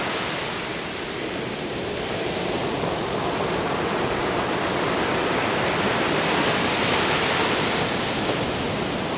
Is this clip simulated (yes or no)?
no